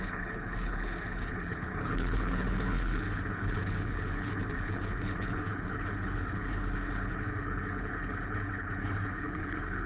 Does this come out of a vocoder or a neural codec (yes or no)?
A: yes